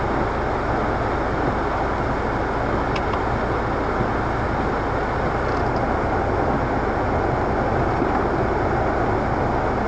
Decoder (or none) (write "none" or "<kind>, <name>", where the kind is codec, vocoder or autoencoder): none